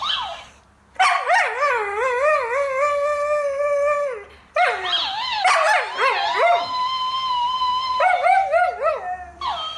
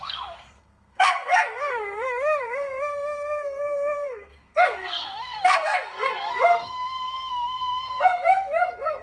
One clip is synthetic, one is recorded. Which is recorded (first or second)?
first